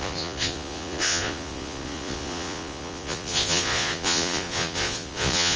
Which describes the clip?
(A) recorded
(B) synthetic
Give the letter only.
B